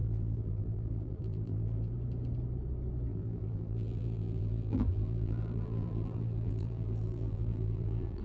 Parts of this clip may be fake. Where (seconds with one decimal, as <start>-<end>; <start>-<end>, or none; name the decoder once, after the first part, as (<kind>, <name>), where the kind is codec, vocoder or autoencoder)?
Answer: 0.0-1.9 (vocoder, BigVGAN v2); 3.1-8.2